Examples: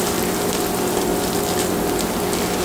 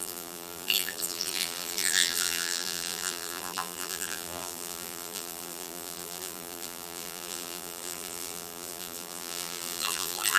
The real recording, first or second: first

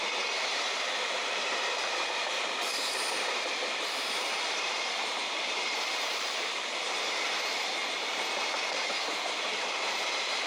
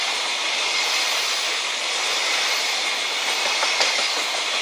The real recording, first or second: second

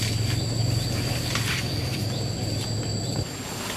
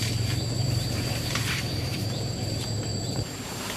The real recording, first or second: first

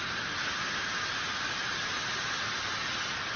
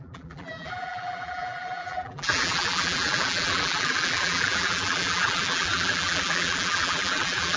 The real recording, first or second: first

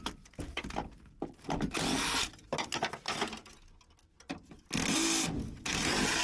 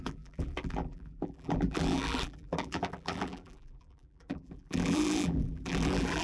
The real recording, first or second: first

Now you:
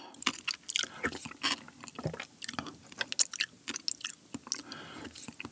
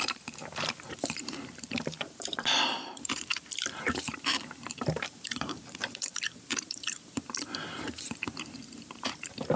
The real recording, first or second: first